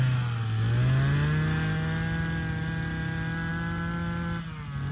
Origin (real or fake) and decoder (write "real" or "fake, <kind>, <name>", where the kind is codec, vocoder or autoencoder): real